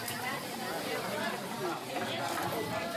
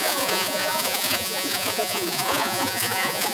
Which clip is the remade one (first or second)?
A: second